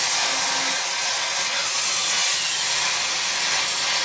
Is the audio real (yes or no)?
yes